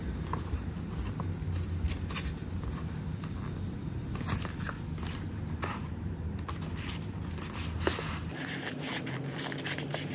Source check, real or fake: real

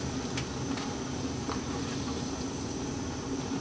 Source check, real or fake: real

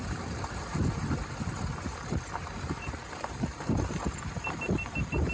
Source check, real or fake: real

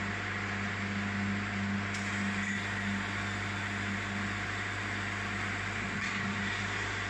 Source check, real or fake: real